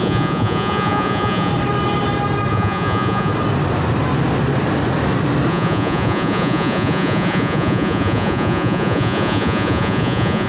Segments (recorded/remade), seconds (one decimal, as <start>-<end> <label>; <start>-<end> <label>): 0.0-1.5 remade; 1.5-2.5 recorded; 2.5-3.3 remade; 3.3-5.5 recorded; 5.5-10.5 remade